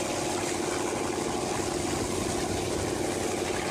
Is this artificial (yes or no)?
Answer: no